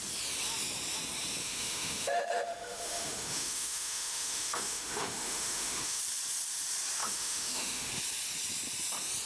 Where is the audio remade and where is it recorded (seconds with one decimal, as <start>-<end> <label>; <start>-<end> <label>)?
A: 0.0-1.4 recorded; 1.4-6.0 remade; 6.0-7.0 recorded; 7.0-7.9 remade; 7.9-9.3 recorded